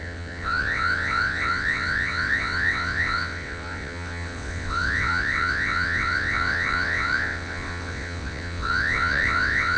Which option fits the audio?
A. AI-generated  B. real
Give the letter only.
A